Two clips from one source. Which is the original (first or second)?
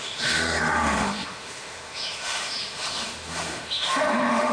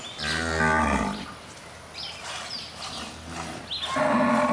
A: second